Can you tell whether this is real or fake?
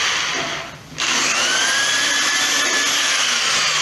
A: real